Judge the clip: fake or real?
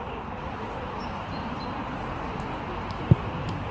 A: fake